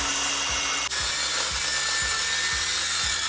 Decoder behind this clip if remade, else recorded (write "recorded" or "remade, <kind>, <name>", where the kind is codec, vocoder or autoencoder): recorded